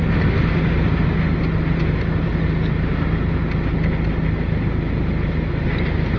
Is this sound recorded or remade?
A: recorded